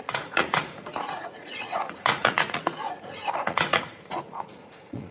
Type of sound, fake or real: fake